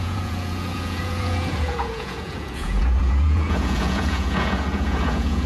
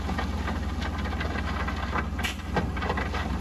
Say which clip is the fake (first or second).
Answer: first